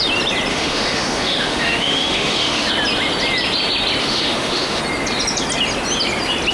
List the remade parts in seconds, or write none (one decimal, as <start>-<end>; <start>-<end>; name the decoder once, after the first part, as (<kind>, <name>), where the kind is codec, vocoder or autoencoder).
0.5-2.7 (autoencoder, DAC-VAE); 4.0-4.8